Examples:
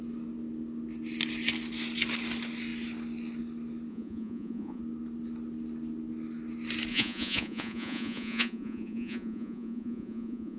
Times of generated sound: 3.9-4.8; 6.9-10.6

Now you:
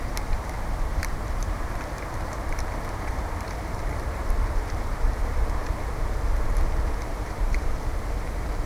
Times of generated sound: 0.0-8.7

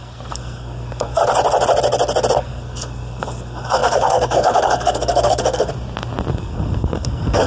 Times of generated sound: 0.0-1.2; 2.4-5.7; 6.3-7.5

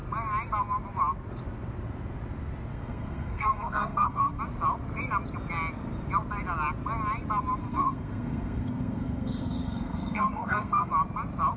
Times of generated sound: 2.7-4.4; 7.6-10.9

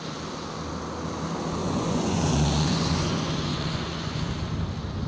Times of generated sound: 1.6-4.3

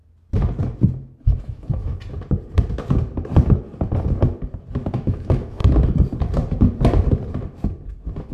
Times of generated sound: 1.4-1.9; 4.9-5.6